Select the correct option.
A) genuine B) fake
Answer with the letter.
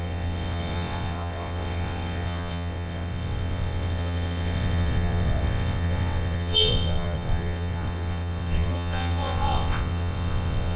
B